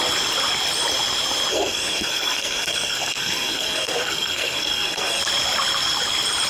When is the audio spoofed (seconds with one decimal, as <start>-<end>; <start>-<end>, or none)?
1.5-5.2